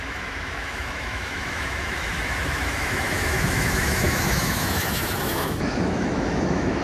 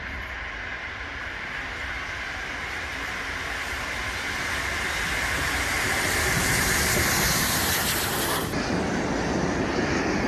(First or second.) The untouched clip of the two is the second